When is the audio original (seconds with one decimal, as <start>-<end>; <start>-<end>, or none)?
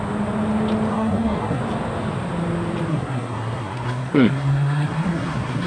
0.0-0.9; 1.6-2.9